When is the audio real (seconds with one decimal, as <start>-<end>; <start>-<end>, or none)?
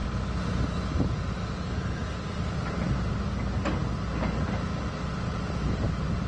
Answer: 0.0-6.3